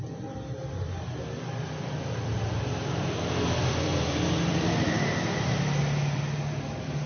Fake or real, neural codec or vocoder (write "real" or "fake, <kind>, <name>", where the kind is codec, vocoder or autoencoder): fake, vocoder, BigVGAN v2